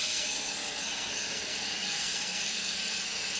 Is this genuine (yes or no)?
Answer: no